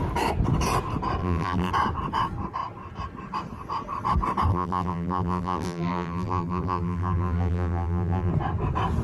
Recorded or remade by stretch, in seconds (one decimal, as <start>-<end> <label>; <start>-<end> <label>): 0.0-1.2 recorded; 1.2-1.7 remade; 1.7-4.5 recorded; 4.5-8.3 remade; 8.3-9.0 recorded